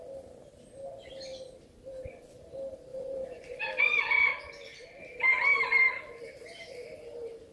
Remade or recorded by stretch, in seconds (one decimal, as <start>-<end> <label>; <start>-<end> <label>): 0.0-2.9 recorded; 2.9-3.6 remade; 3.6-7.5 recorded